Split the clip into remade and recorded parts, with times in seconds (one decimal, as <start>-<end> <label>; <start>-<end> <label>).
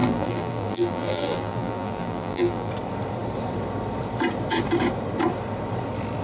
0.0-2.7 remade; 2.7-6.2 recorded